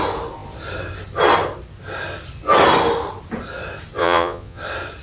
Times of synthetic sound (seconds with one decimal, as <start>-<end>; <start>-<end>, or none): 4.0-4.6